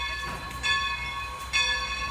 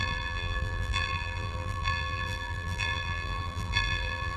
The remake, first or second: second